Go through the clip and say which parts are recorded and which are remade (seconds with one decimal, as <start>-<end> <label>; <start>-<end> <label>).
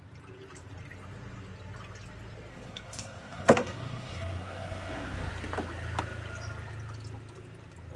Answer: 0.0-2.5 recorded; 2.5-5.3 remade; 5.3-8.0 recorded